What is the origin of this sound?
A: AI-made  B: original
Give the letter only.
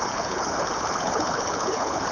A